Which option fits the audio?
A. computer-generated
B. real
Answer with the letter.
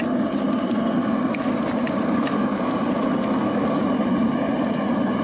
B